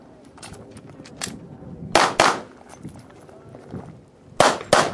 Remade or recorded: recorded